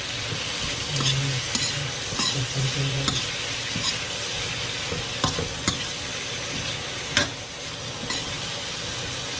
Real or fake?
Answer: real